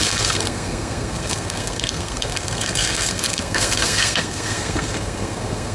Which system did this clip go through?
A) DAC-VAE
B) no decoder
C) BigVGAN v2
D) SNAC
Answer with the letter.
D